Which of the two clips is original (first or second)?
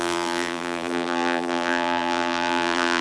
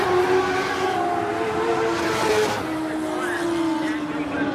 second